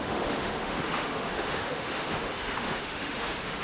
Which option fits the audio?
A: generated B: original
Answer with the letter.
A